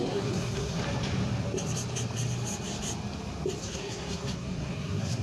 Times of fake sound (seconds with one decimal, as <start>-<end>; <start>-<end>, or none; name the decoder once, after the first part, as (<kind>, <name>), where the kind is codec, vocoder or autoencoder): 0.0-0.8 (codec, SNAC); 3.6-5.2